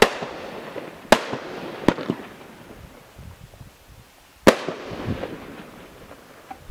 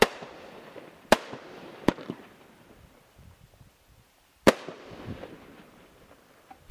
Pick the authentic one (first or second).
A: first